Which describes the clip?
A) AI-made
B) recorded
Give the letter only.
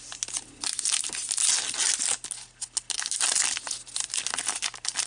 B